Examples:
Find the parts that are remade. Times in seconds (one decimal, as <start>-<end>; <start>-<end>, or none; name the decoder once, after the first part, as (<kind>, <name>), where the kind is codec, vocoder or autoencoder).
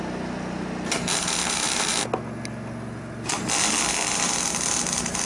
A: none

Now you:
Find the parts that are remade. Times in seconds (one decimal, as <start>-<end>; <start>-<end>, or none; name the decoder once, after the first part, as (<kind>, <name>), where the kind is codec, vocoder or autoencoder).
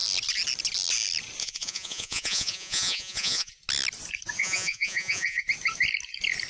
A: 1.4-3.5 (vocoder, Vocos); 4.4-5.4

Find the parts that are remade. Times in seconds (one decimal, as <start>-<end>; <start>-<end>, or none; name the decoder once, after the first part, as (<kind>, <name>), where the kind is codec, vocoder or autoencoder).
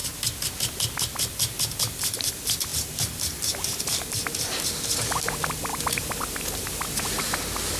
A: 5.7-7.2 (vocoder, BigVGAN v2)